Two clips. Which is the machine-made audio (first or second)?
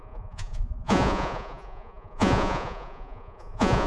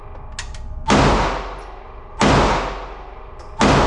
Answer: first